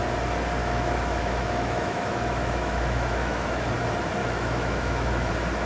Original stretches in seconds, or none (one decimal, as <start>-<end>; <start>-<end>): 0.0-0.6; 3.7-4.2; 5.3-5.7